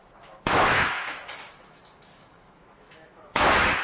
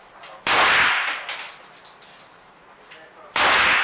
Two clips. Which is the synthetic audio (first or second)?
first